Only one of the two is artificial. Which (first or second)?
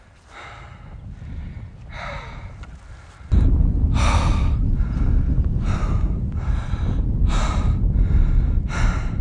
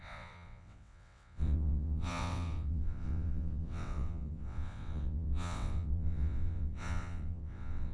second